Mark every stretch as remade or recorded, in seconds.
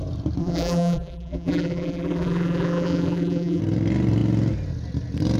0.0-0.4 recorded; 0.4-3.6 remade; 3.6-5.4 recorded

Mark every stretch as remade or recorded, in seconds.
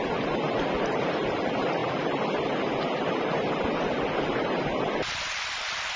0.0-6.0 recorded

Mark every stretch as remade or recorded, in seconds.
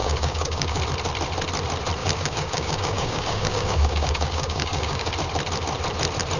0.0-0.8 remade; 0.8-2.0 recorded; 2.0-5.1 remade; 5.1-6.4 recorded